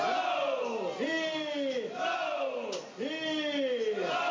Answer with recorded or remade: recorded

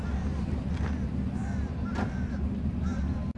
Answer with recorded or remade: recorded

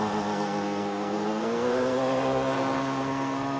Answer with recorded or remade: remade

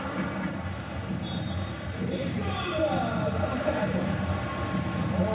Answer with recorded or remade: recorded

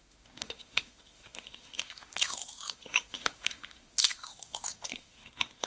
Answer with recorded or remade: remade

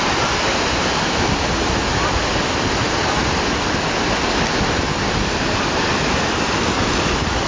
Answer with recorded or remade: recorded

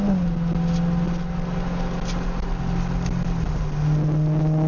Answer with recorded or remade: recorded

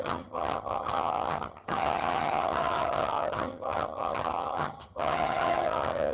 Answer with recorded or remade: remade